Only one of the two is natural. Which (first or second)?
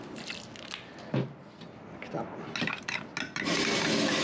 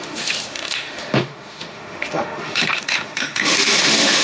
first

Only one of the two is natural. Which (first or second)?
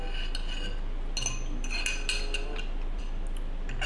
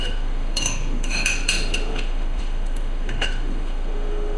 first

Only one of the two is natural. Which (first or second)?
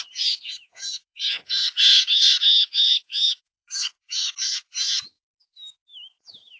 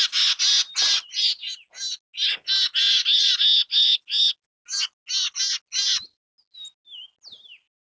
second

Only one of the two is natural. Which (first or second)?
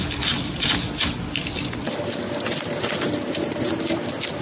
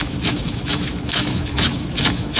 first